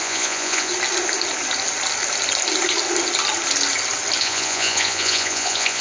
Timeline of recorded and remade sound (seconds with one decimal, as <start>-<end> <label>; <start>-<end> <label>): 0.0-0.7 remade; 0.7-4.2 recorded; 4.2-5.8 remade